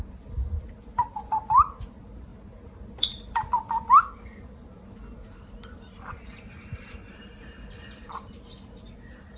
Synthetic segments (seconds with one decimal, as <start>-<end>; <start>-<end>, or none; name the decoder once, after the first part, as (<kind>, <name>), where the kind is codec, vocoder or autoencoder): none